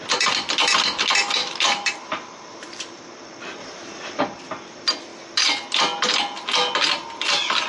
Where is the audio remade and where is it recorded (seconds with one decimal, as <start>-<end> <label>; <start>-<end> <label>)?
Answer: 0.0-1.4 recorded; 1.4-3.1 remade; 3.1-3.6 recorded; 3.6-4.2 remade; 4.2-7.7 recorded